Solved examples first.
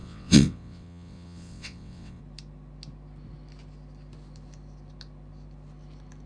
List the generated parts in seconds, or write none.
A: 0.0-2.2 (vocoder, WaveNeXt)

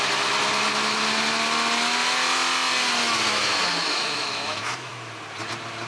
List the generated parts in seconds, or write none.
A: 3.8-4.9 (autoencoder, DAC-VAE)

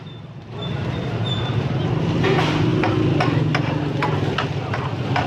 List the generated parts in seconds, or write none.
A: none

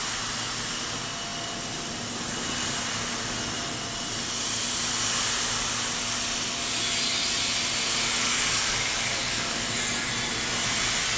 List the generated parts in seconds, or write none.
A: 8.2-9.6 (codec, DAC)

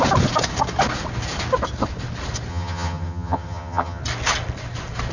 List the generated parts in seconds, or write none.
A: 2.5-4.0 (vocoder, HiFi-GAN)

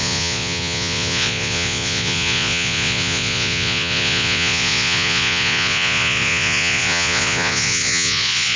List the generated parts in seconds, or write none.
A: 0.0-8.6 (vocoder, Vocos)

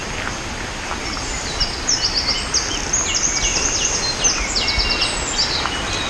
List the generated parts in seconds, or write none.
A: none

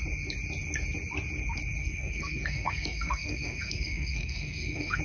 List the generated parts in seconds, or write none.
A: 1.8-5.0 (codec, SNAC)